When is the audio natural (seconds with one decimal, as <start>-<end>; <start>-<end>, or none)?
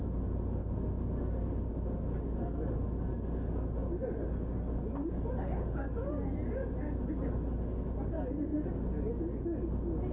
0.0-10.1